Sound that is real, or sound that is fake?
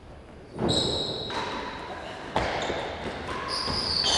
real